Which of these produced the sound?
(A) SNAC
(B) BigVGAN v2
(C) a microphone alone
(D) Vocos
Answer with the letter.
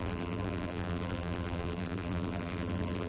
B